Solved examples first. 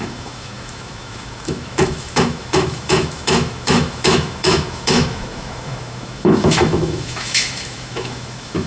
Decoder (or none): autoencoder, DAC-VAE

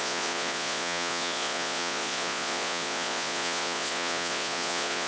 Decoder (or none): vocoder, Vocos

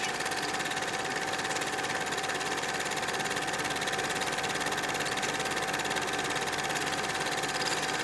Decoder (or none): none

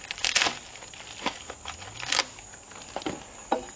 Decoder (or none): none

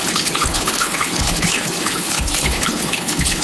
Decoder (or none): codec, HILCodec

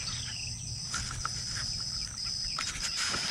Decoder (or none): vocoder, BigVGAN v2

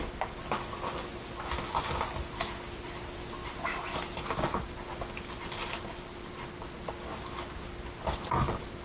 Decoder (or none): none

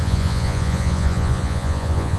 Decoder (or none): vocoder, Vocos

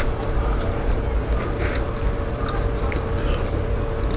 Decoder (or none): vocoder, BigVGAN v2